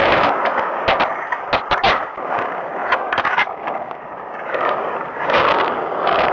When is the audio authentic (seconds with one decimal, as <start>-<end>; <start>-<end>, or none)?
1.0-1.7